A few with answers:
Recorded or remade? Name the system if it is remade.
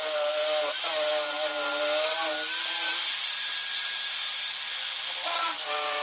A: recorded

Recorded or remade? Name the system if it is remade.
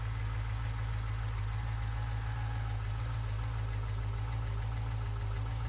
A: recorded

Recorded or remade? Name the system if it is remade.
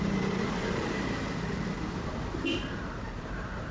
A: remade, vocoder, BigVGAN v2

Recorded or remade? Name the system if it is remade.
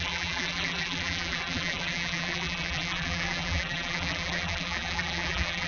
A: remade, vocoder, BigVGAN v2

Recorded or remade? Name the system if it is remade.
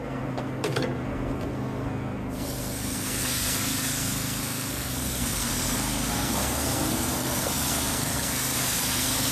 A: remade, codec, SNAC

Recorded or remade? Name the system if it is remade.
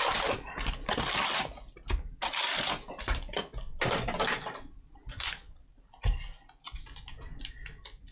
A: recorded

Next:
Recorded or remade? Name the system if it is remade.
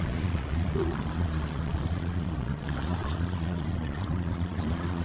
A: remade, vocoder, Vocos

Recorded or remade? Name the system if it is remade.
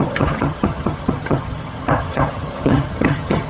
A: remade, vocoder, HiFi-GAN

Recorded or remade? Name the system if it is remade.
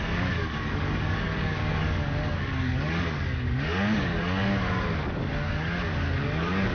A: remade, codec, DAC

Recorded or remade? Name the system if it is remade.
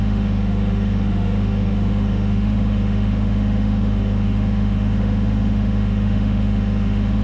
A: remade, autoencoder, DAC-VAE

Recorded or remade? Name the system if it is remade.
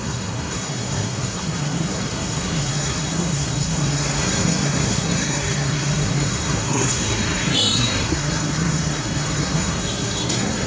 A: remade, codec, SNAC